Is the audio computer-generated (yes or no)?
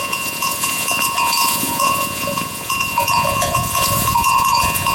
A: yes